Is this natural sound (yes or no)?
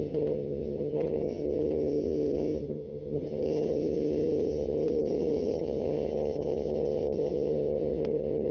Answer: no